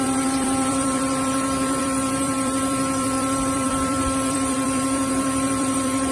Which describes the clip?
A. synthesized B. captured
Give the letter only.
A